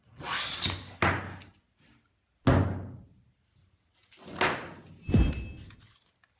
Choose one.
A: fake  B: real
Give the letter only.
B